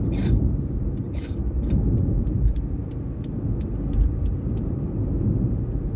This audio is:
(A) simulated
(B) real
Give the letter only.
A